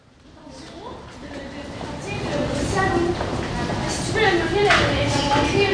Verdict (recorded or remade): recorded